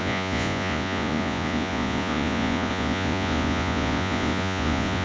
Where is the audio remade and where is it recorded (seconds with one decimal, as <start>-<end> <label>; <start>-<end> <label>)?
0.0-5.0 remade